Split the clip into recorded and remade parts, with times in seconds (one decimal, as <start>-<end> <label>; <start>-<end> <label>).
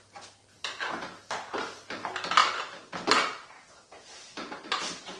0.0-5.2 recorded